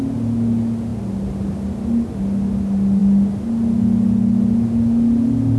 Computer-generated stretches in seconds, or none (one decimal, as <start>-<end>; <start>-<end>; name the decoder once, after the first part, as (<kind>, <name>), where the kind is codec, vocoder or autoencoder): none